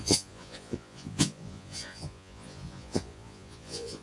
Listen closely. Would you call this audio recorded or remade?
remade